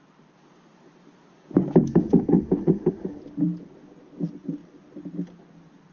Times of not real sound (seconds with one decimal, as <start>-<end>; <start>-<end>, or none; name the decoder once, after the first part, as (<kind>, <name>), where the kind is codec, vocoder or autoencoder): 1.9-3.2 (autoencoder, DAC-VAE)

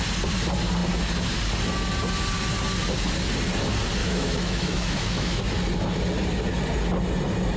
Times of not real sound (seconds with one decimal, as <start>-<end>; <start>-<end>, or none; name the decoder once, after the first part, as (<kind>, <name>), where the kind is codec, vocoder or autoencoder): 4.0-5.4 (autoencoder, DAC-VAE)

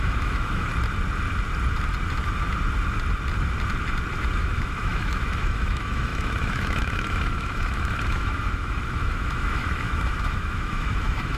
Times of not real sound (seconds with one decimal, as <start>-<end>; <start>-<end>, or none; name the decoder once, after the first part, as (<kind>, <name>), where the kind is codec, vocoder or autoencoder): 0.0-0.7 (autoencoder, DAC-VAE); 4.4-11.4

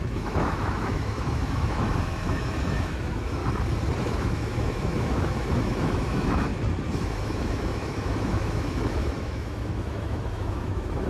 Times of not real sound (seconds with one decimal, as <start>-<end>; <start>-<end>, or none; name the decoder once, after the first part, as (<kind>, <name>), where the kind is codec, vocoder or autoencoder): 0.0-3.4 (autoencoder, DAC-VAE); 4.0-6.5; 7.0-11.1

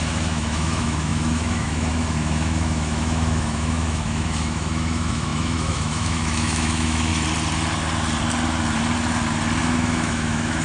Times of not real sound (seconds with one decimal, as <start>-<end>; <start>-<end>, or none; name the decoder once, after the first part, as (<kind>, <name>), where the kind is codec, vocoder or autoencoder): 0.0-7.1 (autoencoder, DAC-VAE); 9.6-10.6

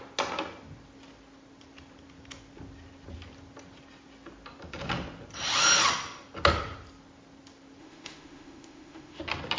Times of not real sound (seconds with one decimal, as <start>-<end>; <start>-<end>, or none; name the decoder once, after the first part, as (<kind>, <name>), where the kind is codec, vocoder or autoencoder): 7.8-9.2 (autoencoder, DAC-VAE)